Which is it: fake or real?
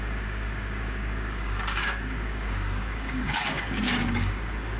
fake